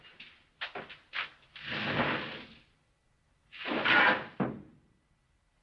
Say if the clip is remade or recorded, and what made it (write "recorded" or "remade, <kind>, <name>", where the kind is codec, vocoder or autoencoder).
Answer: recorded